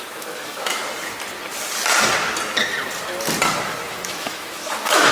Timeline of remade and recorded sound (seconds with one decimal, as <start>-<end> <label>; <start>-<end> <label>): 0.0-0.8 remade; 0.8-3.9 recorded; 3.9-5.1 remade